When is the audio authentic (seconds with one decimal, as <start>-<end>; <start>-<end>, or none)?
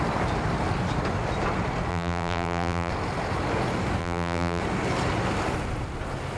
0.0-1.9; 2.9-4.0; 4.6-6.4